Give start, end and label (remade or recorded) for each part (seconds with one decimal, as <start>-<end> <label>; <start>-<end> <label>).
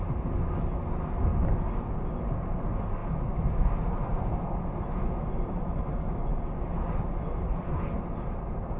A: 0.0-8.8 recorded